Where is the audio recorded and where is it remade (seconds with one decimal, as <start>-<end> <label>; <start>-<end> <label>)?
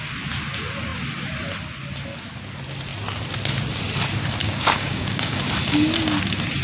0.0-4.4 recorded; 4.4-5.4 remade; 5.4-6.6 recorded